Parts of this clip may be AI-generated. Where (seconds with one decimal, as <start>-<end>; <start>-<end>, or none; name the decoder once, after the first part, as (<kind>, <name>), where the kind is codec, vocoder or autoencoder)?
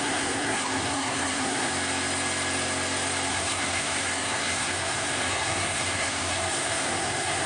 0.0-1.7 (codec, SNAC); 3.3-7.5